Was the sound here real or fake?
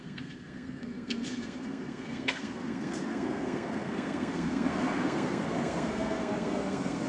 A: fake